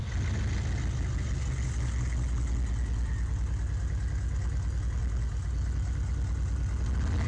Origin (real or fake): real